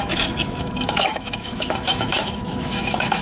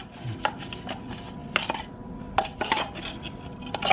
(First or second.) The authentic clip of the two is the second